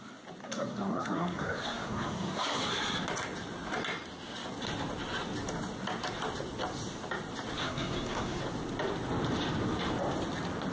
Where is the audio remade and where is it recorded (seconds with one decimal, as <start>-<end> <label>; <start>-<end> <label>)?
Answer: 0.0-0.4 recorded; 0.4-2.7 remade; 2.7-7.6 recorded; 7.6-8.4 remade; 8.4-10.7 recorded